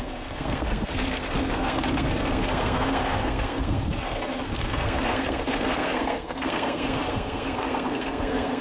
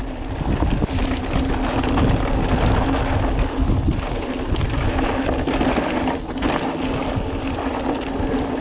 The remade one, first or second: first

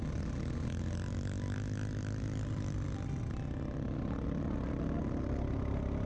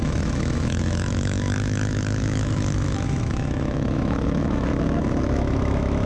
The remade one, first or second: second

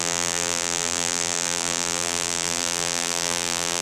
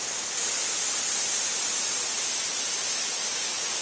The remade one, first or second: first